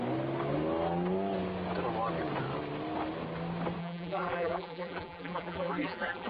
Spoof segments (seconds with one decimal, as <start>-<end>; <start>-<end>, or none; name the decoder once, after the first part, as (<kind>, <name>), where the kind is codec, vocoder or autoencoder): 3.8-6.3 (vocoder, BigVGAN v2)